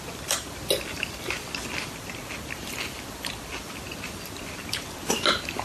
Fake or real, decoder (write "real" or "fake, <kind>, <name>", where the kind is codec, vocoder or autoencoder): real